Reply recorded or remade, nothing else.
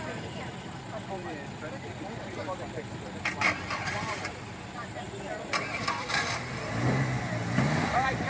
recorded